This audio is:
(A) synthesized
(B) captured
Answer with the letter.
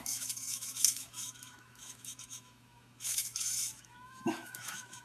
A